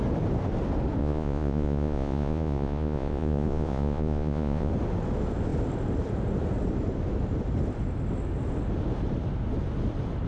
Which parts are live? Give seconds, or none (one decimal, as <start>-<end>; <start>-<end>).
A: 0.0-1.0; 4.7-10.3